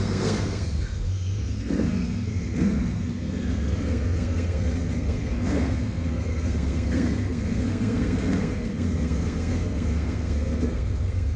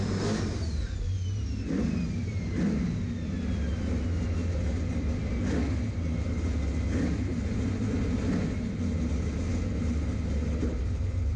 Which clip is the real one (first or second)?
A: second